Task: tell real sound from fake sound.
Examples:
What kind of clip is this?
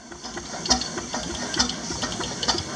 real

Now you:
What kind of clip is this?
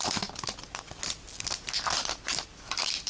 real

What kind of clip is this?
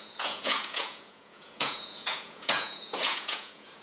fake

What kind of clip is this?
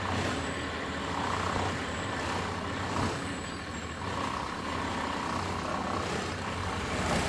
real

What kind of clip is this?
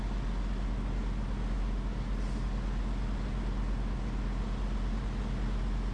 real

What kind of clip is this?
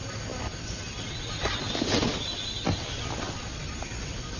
real